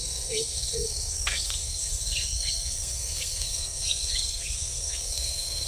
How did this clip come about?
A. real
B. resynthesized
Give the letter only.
B